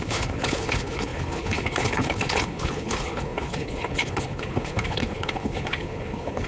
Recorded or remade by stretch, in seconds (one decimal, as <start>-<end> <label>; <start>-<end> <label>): 0.0-6.5 remade